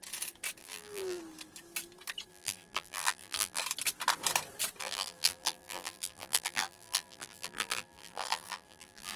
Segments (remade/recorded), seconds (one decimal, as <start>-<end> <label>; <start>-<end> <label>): 0.0-0.6 recorded; 0.6-1.2 remade; 1.2-2.3 recorded; 2.3-3.6 remade; 3.6-4.8 recorded; 4.8-9.2 remade